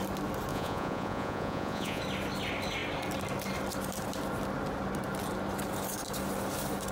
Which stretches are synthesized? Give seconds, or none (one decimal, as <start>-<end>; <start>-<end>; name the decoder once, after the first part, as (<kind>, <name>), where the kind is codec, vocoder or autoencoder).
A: 0.5-2.0 (vocoder, Vocos)